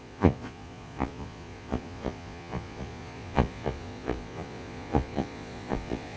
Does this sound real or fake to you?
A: fake